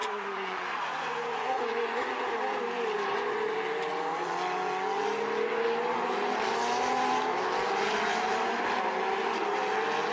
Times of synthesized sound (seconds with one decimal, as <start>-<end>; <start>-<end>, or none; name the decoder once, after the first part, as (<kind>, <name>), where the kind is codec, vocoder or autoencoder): 0.0-2.1 (vocoder, Vocos)